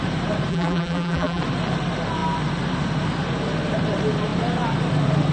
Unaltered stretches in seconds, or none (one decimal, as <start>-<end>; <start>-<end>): 0.0-0.5; 1.4-5.3